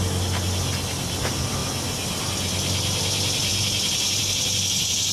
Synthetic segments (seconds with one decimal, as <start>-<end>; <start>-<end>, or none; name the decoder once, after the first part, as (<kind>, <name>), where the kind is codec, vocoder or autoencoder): none